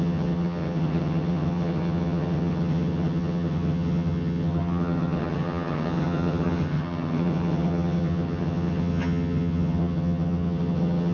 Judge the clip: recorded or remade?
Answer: remade